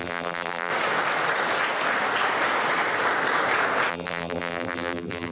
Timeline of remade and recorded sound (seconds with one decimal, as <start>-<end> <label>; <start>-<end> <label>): 0.0-0.7 remade; 0.7-3.9 recorded; 3.9-5.3 remade

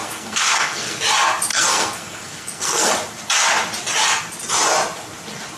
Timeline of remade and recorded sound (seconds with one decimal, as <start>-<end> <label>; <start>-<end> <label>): 0.0-1.0 remade; 1.0-1.5 recorded; 1.5-2.9 remade; 2.9-5.6 recorded

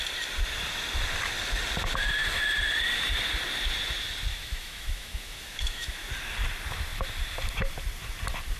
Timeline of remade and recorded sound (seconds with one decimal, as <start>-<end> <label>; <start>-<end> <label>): 0.0-4.3 recorded; 4.3-6.1 remade; 6.1-8.6 recorded

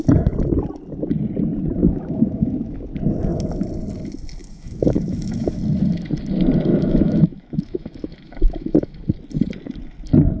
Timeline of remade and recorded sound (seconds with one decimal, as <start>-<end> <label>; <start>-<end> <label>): 0.0-1.8 recorded; 1.8-2.8 remade; 2.8-4.4 recorded; 4.4-5.6 remade; 5.6-6.7 recorded; 6.7-9.0 remade; 9.0-10.4 recorded

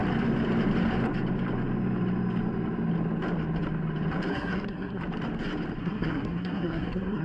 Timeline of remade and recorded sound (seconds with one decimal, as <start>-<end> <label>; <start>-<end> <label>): 0.0-4.3 recorded; 4.3-5.0 remade; 5.0-5.8 recorded; 5.8-7.2 remade

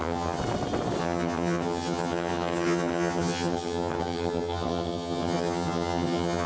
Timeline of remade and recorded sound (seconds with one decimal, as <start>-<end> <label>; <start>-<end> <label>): 0.0-0.4 remade; 0.4-1.0 recorded; 1.0-6.5 remade

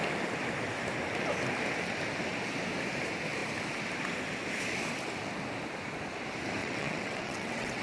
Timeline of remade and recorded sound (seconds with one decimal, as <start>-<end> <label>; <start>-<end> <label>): 0.0-6.6 recorded; 6.6-7.8 remade